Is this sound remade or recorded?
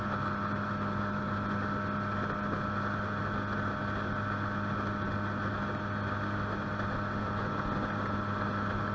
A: recorded